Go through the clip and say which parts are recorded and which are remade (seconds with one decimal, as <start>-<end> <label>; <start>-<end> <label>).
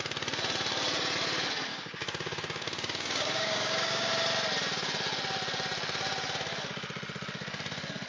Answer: 0.0-1.7 recorded; 1.7-4.1 remade; 4.1-8.1 recorded